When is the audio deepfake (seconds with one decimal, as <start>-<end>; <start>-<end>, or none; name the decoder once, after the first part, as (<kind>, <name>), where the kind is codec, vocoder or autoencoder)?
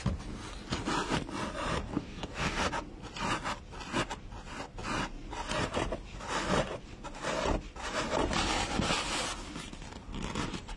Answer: 1.9-2.7 (codec, DAC)